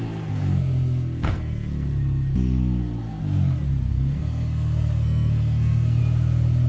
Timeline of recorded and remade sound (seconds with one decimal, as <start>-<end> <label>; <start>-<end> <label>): 0.0-3.2 remade; 3.2-3.9 recorded; 3.9-6.0 remade; 6.0-6.7 recorded